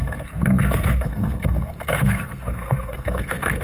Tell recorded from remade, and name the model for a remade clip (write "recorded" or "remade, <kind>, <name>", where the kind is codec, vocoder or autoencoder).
remade, codec, SNAC